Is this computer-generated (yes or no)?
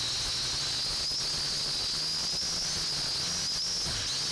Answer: no